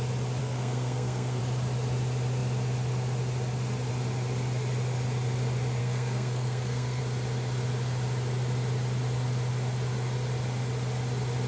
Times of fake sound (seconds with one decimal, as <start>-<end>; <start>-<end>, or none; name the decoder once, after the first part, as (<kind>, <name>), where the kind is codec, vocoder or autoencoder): 0.4-1.4 (codec, SNAC); 5.8-7.0